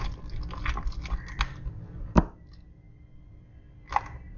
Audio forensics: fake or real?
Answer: real